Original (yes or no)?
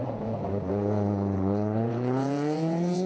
no